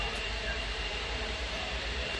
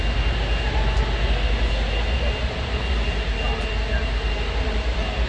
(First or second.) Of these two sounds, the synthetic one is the first